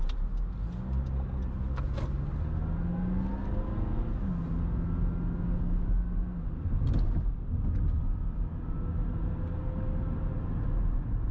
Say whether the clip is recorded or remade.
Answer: recorded